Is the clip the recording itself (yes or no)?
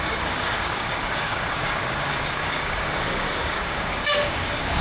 no